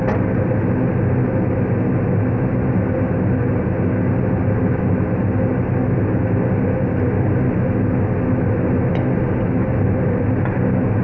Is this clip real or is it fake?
real